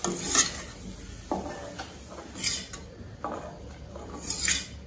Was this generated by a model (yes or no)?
no